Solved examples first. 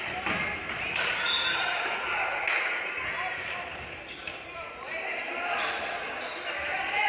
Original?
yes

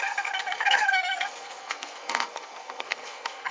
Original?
no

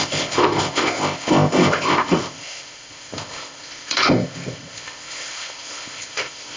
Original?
no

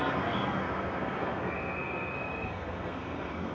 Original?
no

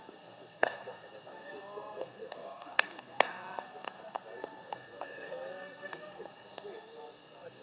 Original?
no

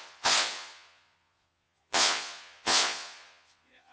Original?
no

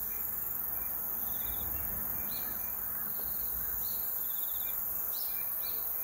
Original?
yes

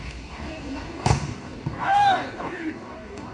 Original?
no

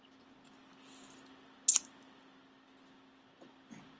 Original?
yes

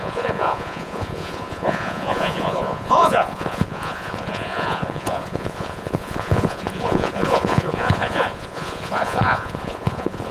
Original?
no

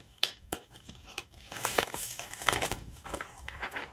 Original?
no